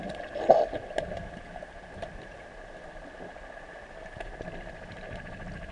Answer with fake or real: real